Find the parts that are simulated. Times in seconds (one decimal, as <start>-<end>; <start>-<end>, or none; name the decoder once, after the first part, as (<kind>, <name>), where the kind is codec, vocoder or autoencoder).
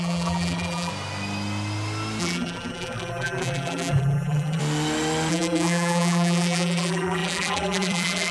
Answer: 0.0-0.9 (vocoder, BigVGAN v2); 2.2-4.6; 5.3-8.3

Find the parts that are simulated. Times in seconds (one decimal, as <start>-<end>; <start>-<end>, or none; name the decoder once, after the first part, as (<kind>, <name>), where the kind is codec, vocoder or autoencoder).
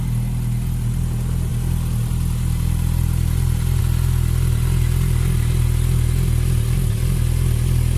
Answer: none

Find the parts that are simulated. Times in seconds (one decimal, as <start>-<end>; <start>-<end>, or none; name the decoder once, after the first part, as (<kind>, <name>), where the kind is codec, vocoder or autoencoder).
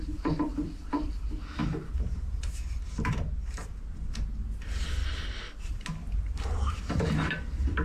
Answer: 0.0-5.0 (vocoder, BigVGAN v2); 5.6-7.8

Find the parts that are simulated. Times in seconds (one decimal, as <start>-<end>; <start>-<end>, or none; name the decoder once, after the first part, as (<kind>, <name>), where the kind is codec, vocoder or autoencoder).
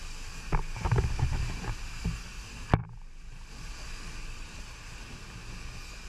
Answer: 2.8-3.5 (vocoder, BigVGAN v2)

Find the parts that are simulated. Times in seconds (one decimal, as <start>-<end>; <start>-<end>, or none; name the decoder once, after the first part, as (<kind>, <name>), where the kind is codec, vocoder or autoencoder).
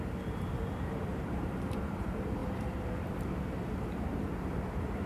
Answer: 0.0-5.1 (vocoder, BigVGAN v2)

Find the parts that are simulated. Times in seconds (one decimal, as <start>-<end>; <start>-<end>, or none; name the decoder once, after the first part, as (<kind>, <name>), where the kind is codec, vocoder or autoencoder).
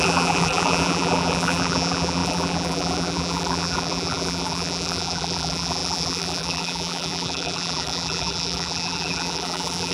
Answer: 0.0-9.9 (vocoder, BigVGAN v2)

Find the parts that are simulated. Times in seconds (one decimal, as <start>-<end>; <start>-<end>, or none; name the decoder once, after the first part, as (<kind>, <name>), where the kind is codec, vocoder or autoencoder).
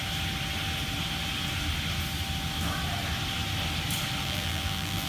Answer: 4.2-5.1 (vocoder, BigVGAN v2)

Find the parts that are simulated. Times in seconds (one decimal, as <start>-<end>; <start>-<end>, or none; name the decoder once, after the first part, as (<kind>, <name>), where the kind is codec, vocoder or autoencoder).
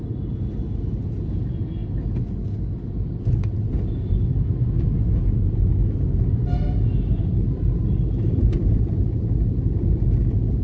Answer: none